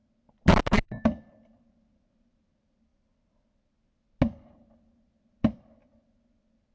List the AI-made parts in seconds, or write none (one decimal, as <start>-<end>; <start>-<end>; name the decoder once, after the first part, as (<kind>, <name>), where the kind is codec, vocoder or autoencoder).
none